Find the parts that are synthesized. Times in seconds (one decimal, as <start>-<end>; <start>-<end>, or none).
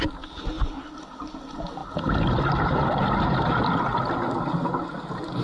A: none